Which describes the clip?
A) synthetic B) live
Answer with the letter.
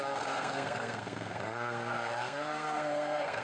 A